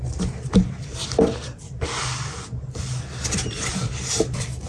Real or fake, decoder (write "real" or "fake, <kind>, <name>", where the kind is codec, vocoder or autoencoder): real